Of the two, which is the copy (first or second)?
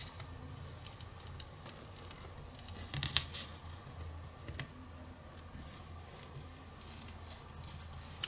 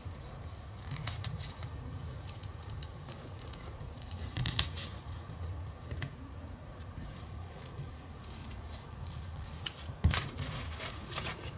second